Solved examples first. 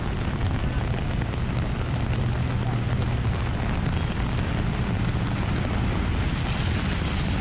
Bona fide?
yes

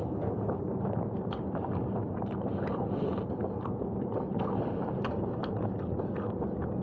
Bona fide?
yes